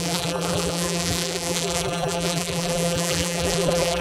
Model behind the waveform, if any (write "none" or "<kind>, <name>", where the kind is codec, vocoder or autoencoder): vocoder, BigVGAN v2